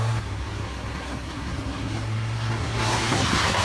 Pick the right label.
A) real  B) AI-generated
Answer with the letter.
B